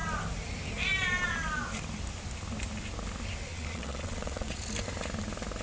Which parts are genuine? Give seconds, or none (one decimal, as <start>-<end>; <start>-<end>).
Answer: 0.0-3.5; 4.6-5.6